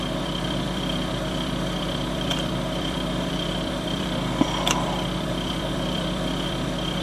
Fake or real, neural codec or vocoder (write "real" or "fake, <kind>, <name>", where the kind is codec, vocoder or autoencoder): fake, vocoder, BigVGAN v2